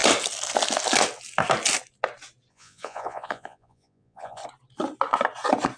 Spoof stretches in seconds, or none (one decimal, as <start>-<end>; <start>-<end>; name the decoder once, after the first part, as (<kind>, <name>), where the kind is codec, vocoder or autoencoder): 2.5-4.4 (vocoder, Vocos)